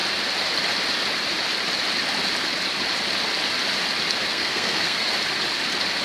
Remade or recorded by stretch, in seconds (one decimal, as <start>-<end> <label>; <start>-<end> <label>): 0.0-4.3 recorded; 4.3-5.1 remade; 5.1-6.0 recorded